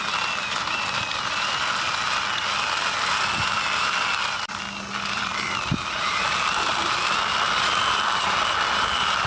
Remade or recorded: remade